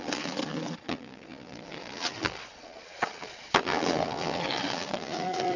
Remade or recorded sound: remade